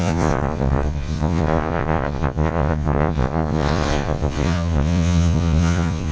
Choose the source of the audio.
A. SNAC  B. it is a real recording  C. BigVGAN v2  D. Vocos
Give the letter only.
D